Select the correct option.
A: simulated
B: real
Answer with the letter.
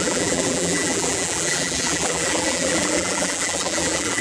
A